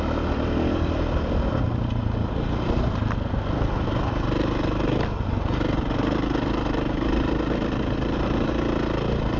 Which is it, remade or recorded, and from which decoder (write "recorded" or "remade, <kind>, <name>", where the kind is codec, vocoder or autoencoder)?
recorded